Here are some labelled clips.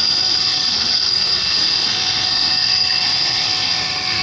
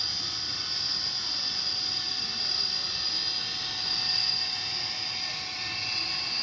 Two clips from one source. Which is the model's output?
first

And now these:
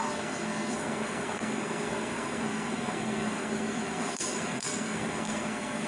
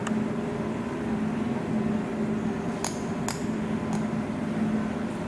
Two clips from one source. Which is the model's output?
first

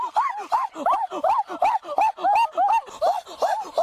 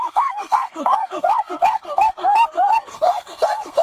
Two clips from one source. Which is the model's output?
second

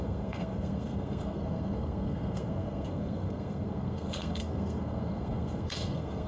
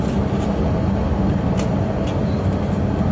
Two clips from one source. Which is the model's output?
first